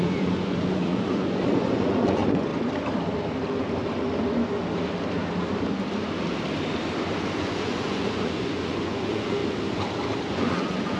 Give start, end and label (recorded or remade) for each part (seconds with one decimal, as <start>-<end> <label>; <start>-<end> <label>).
0.0-2.5 remade; 2.5-7.4 recorded; 7.4-9.4 remade; 9.4-10.3 recorded; 10.3-11.0 remade